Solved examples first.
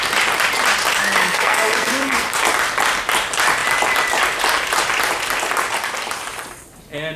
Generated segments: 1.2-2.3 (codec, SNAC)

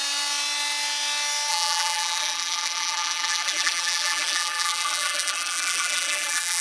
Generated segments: 1.5-6.6 (vocoder, BigVGAN v2)

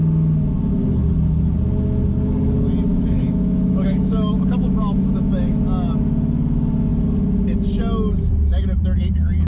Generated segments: 2.9-5.6 (autoencoder, DAC-VAE)

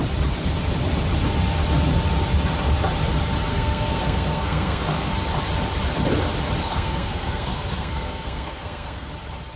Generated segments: 3.5-5.1 (codec, SNAC); 6.6-9.1